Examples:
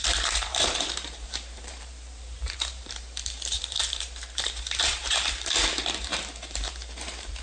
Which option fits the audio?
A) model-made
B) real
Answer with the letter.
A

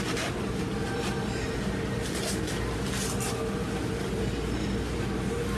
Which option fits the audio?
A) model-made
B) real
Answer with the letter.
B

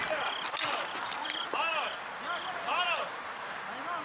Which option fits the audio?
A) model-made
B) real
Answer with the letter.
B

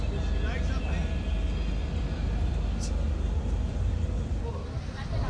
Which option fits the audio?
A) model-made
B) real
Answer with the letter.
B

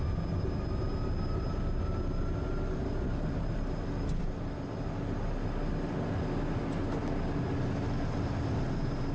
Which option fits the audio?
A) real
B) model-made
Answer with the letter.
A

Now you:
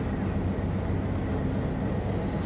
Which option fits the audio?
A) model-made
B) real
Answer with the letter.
B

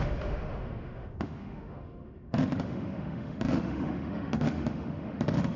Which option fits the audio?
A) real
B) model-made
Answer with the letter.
B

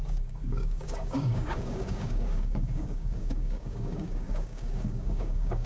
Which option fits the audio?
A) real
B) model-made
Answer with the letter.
B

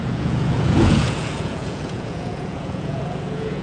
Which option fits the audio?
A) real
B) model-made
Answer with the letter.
B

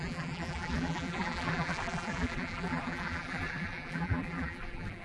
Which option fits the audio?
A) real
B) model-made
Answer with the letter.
B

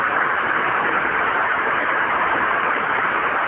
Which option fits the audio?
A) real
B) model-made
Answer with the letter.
B